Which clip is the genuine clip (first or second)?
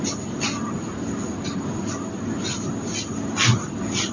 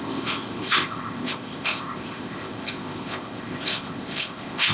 first